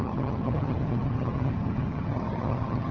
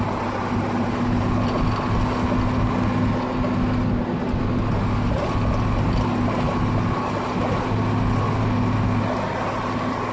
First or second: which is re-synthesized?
first